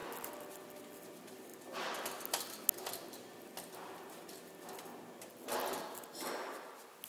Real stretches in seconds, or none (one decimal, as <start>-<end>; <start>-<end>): 0.0-7.1